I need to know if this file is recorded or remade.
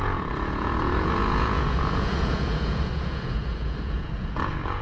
remade